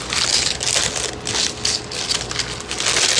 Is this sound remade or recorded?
recorded